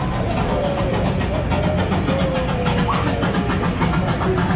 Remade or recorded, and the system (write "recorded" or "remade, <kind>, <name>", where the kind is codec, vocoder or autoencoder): recorded